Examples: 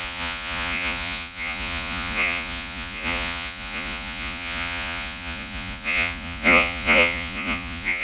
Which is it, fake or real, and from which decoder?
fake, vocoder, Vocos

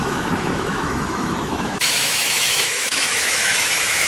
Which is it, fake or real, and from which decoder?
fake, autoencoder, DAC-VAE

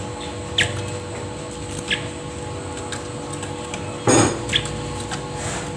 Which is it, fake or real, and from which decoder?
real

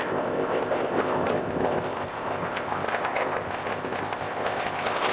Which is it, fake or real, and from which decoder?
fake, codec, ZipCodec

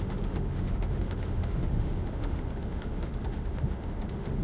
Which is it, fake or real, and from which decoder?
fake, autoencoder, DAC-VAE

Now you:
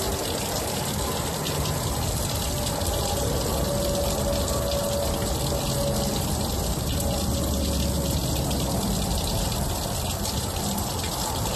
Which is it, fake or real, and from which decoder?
real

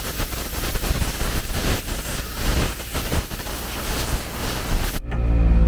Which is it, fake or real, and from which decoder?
real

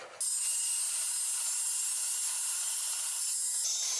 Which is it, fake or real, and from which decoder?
real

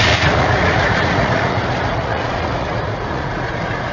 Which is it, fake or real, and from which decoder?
fake, vocoder, Vocos